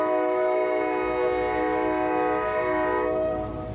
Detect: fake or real real